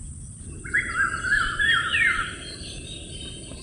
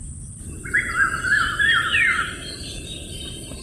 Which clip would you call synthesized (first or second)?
first